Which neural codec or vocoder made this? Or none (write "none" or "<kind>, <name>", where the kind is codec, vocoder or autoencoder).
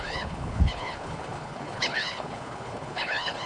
codec, HILCodec